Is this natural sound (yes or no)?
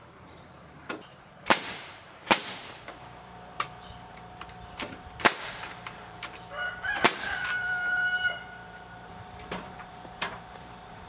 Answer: no